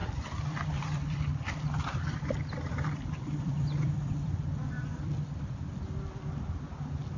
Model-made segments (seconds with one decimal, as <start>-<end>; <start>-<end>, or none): 0.0-4.3; 4.9-5.5